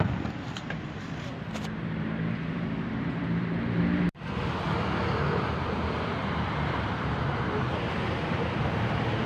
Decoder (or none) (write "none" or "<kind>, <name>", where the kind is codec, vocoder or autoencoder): vocoder, BigVGAN v2